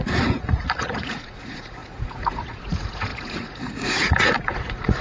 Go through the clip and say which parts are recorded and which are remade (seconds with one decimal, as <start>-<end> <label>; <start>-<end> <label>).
0.0-5.0 remade